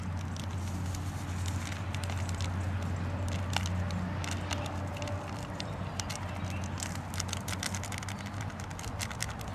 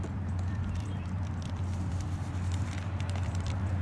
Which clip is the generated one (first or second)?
second